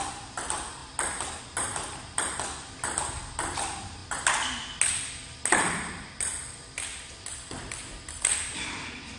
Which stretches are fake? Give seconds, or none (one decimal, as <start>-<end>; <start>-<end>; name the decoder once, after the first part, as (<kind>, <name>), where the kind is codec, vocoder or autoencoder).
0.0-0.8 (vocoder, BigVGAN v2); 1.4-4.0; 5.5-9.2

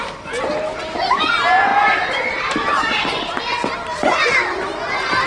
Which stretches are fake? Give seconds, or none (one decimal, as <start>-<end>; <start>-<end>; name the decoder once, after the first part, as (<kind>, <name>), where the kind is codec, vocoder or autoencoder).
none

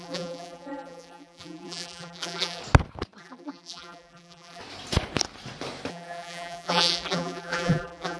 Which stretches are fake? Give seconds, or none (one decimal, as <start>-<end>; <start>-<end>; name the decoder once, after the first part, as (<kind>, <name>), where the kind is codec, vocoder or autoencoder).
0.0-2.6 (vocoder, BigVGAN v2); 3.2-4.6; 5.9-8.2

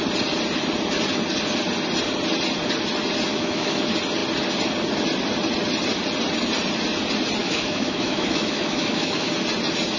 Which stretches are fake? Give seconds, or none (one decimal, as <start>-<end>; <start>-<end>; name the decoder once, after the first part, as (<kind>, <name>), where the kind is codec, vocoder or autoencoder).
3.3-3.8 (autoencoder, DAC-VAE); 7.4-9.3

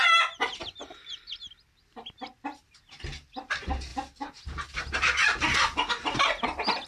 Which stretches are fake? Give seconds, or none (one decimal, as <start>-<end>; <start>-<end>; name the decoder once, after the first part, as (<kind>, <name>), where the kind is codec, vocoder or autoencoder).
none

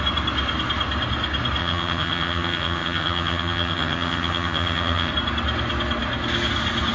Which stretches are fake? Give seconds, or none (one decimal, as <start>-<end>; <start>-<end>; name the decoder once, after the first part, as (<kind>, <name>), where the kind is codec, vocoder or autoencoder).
1.6-5.1 (vocoder, HiFi-GAN)

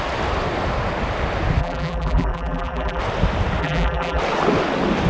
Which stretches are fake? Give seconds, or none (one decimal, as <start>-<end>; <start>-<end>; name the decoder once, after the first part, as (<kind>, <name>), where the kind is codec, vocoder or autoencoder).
1.6-3.0 (vocoder, BigVGAN v2); 3.6-4.2